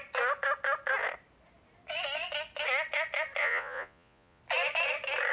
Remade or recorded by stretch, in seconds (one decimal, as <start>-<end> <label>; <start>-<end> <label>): 0.0-3.4 recorded; 3.4-4.4 remade; 4.4-5.3 recorded